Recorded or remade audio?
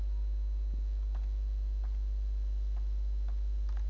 recorded